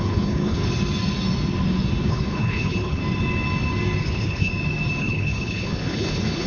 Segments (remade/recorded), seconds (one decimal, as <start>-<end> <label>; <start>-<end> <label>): 0.0-0.6 remade; 0.6-2.1 recorded; 2.1-3.0 remade; 3.0-4.0 recorded; 4.0-4.5 remade; 4.5-5.0 recorded; 5.0-6.5 remade